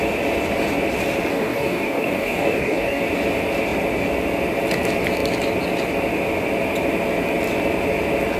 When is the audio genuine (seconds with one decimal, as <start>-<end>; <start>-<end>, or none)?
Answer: 0.0-1.3; 3.0-8.4